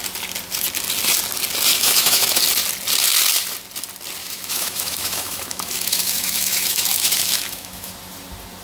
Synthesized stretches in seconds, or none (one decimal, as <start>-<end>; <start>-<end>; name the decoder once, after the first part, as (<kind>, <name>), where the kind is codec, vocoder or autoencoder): 1.7-2.4 (autoencoder, DAC-VAE); 4.2-7.9